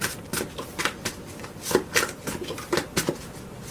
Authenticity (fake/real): real